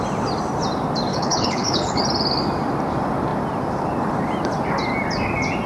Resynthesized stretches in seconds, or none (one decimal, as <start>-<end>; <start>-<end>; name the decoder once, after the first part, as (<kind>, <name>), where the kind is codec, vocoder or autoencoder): 1.1-2.0 (codec, HILCodec)